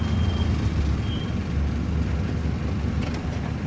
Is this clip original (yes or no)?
yes